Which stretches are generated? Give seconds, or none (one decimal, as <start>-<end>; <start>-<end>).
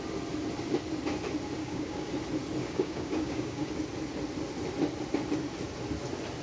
1.6-2.1; 2.6-3.7